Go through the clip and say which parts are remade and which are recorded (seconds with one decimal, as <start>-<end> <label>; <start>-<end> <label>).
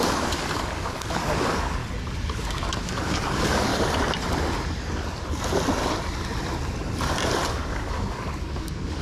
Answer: 0.0-1.8 remade; 1.8-2.3 recorded; 2.3-3.7 remade; 3.7-7.5 recorded; 7.5-9.0 remade